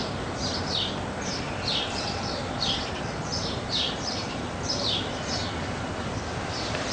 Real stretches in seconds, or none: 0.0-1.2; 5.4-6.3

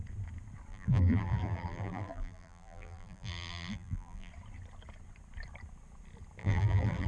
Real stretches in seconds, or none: 0.0-0.7; 4.3-6.4

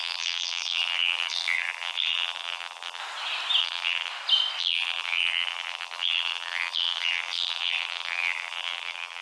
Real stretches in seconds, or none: 3.0-3.6; 4.1-4.6

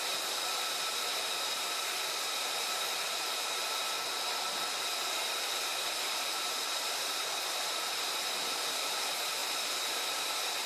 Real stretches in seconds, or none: 0.0-0.5; 3.8-5.7; 8.2-9.4

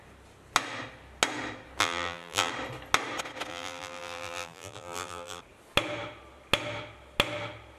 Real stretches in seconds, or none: 0.0-1.8; 2.5-3.5; 5.4-7.8

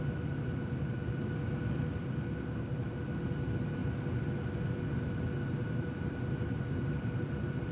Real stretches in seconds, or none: 0.0-7.7

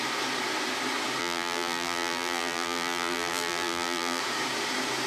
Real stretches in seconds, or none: 0.0-1.2; 4.2-5.1

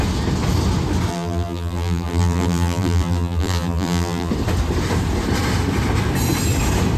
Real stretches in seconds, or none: 0.0-1.1; 4.3-7.0